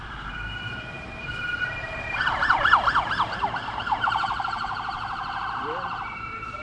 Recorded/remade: remade